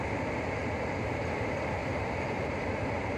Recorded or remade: remade